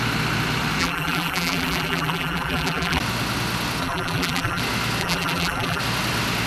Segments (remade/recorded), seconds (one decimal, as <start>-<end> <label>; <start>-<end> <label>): 0.0-0.8 recorded; 0.8-3.0 remade; 3.0-3.8 recorded; 3.8-4.6 remade; 4.6-5.0 recorded; 5.0-5.8 remade; 5.8-6.5 recorded